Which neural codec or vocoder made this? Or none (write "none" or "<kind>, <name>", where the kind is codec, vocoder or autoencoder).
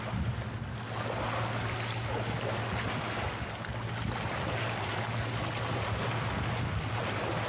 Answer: none